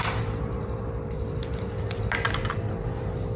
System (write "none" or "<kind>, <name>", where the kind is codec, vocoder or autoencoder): none